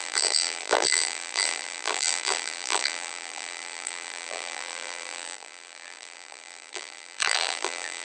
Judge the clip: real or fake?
fake